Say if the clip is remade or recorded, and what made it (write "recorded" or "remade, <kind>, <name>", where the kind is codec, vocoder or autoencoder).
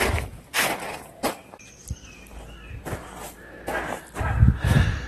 recorded